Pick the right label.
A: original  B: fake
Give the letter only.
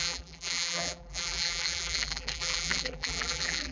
B